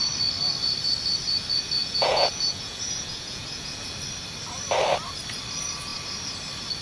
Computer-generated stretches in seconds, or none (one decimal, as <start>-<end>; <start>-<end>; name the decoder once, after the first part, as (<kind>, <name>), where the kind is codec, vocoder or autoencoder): 1.8-3.9 (vocoder, Vocos)